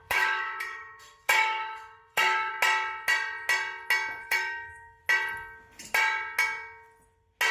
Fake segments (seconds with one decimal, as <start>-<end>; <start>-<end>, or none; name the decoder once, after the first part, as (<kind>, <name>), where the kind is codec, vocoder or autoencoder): 0.0-2.5 (autoencoder, DAC-VAE); 4.2-5.0

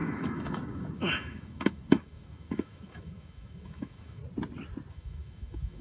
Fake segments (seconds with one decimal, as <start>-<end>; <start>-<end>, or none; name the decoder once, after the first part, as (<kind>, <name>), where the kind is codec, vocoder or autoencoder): 0.0-4.2 (autoencoder, DAC-VAE); 4.9-5.8